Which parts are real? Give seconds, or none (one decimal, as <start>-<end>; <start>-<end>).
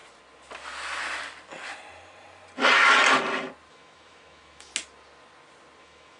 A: 0.0-3.7; 4.7-5.8